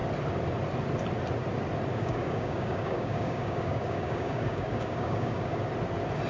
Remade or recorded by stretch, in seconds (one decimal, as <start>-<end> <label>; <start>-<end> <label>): 0.0-1.9 recorded; 1.9-5.6 remade; 5.6-6.3 recorded